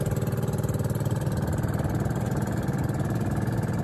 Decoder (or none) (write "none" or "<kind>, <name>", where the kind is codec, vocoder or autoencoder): none